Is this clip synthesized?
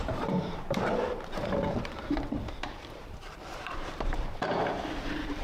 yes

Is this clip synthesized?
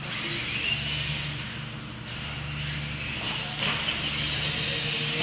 no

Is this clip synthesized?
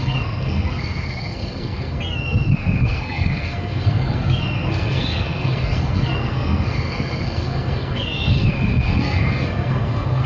yes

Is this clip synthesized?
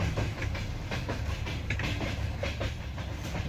no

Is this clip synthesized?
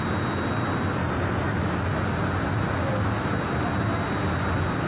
no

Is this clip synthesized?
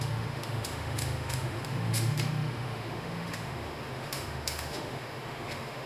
yes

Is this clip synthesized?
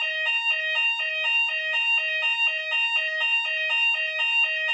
no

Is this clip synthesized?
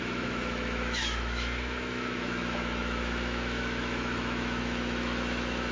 yes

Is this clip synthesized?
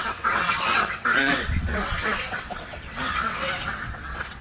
yes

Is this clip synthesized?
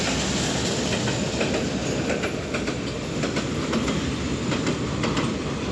no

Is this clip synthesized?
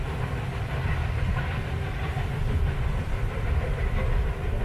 no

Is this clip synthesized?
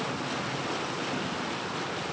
no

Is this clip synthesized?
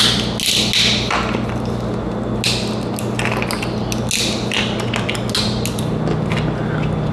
no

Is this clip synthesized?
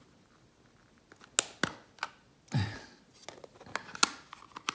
no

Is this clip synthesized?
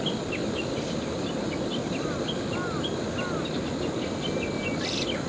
no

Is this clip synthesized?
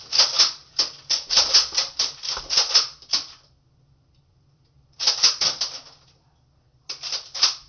no